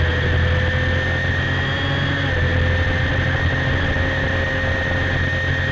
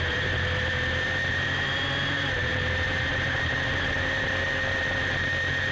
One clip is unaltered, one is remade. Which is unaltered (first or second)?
first